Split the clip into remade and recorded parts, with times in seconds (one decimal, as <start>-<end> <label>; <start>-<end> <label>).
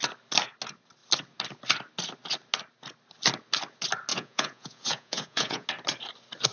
0.0-4.1 recorded; 4.1-5.7 remade; 5.7-6.5 recorded